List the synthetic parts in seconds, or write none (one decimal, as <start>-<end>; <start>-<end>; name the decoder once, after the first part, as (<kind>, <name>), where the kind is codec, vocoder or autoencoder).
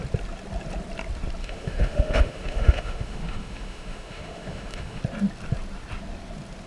1.4-5.0 (autoencoder, DAC-VAE)